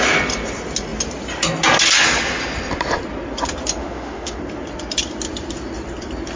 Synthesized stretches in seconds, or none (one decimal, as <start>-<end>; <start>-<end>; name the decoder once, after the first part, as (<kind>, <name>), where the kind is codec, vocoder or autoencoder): 3.8-4.4 (autoencoder, DAC-VAE)